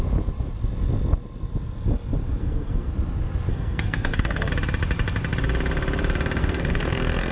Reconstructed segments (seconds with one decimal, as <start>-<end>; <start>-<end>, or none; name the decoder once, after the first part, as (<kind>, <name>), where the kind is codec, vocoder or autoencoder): 2.4-2.9 (codec, SNAC); 3.5-4.5; 6.4-7.3